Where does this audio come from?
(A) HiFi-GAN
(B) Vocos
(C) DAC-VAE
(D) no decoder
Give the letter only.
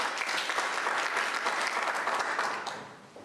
D